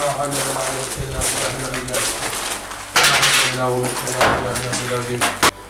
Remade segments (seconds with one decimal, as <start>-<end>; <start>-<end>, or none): none